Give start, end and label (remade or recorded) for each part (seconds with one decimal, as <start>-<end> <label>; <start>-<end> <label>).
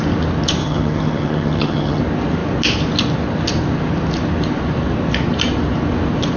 0.0-0.6 recorded; 0.6-2.0 remade; 2.0-6.4 recorded